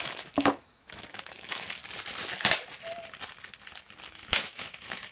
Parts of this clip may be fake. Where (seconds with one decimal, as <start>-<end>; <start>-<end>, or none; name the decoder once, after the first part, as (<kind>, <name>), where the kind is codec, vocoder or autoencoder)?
0.0-1.8 (autoencoder, DAC-VAE); 4.1-5.1